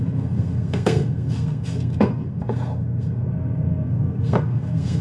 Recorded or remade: remade